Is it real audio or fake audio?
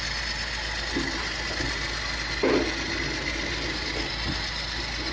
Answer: real